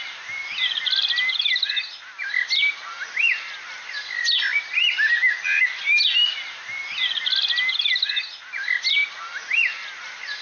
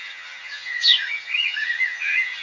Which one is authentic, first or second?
first